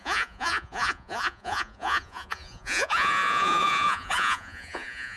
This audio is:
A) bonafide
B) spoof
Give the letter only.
B